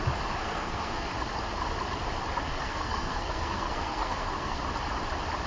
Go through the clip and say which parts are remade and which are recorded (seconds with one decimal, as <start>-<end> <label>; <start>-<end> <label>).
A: 0.0-0.4 recorded; 0.4-1.1 remade; 1.1-2.5 recorded; 2.5-4.6 remade; 4.6-5.5 recorded